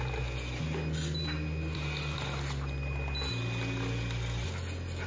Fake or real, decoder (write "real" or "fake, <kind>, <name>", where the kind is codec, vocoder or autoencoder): real